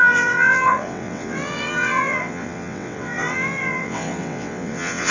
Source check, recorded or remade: remade